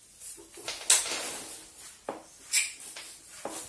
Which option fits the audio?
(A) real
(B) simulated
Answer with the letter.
A